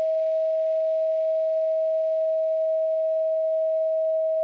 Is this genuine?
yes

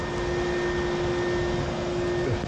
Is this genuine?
yes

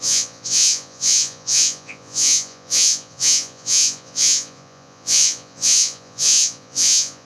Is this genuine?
no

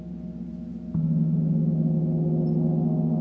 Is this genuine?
yes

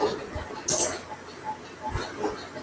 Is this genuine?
yes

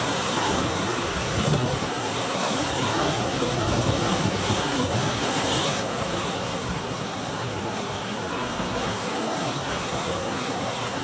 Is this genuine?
no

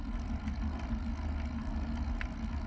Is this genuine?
yes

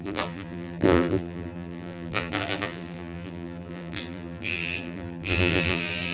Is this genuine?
no